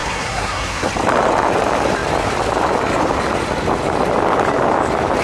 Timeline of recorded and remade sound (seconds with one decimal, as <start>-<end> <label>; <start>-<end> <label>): 0.0-0.9 remade; 0.9-5.2 recorded

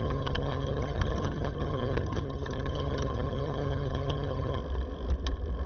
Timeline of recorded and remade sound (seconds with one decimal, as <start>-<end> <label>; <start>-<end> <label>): 0.0-4.6 remade; 4.6-5.7 recorded

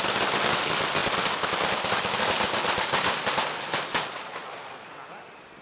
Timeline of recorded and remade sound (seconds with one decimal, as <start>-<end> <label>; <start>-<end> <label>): 0.0-3.9 recorded; 3.9-4.9 remade; 4.9-5.6 recorded

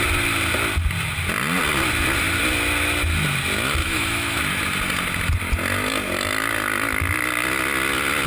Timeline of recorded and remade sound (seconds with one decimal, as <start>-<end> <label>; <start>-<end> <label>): 0.0-3.8 recorded; 3.8-4.4 remade; 4.4-8.3 recorded